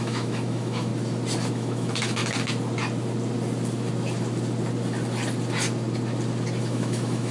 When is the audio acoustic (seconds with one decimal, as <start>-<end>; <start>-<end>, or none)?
0.9-1.5; 2.2-6.6